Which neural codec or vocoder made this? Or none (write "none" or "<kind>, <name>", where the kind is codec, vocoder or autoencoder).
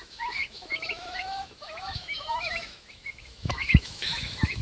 autoencoder, DAC-VAE